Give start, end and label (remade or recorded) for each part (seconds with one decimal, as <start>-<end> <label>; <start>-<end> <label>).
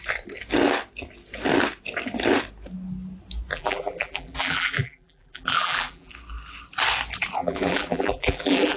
0.0-3.5 recorded; 3.5-6.1 remade; 6.1-7.4 recorded; 7.4-8.8 remade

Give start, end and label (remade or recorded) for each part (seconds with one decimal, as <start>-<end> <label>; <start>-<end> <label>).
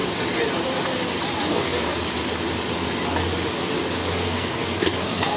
0.0-1.5 recorded; 1.5-1.9 remade; 1.9-4.1 recorded; 4.1-5.4 remade